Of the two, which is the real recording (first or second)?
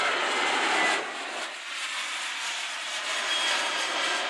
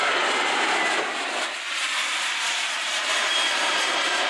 first